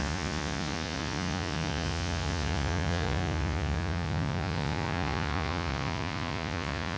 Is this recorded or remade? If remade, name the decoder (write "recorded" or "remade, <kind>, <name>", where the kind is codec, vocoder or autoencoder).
remade, vocoder, Vocos